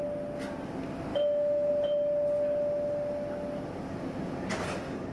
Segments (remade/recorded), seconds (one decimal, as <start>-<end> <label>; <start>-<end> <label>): 0.0-1.1 recorded; 1.1-1.7 remade; 1.7-5.1 recorded